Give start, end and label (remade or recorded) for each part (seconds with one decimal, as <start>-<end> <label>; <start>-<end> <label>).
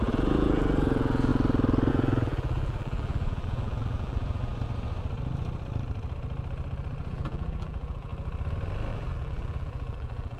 0.0-1.3 remade; 1.3-1.9 recorded; 1.9-4.5 remade; 4.5-7.1 recorded; 7.1-8.1 remade; 8.1-8.9 recorded; 8.9-10.4 remade